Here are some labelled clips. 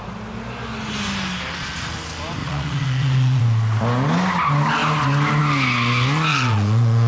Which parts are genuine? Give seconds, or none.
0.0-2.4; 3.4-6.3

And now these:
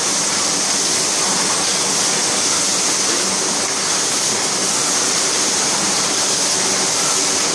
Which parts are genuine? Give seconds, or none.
0.0-4.8; 6.6-7.5

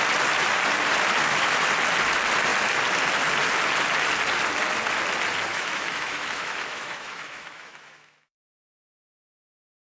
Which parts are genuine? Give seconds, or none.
0.0-1.2; 1.7-5.5

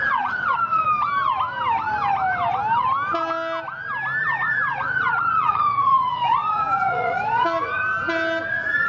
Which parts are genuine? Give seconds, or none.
0.8-4.2; 7.8-8.5

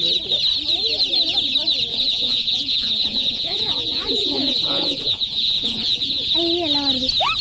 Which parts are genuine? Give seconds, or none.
0.0-1.9; 6.3-7.4